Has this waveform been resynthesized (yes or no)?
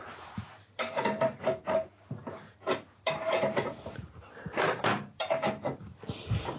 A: yes